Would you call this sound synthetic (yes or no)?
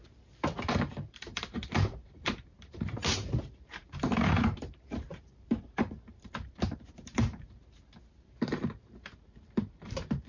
yes